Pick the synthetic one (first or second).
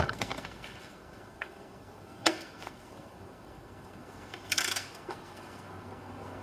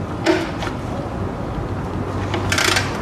first